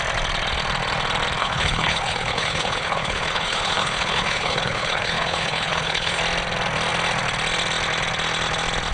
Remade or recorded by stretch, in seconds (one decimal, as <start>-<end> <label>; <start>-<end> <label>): 0.0-1.4 recorded; 1.4-6.2 remade; 6.2-8.9 recorded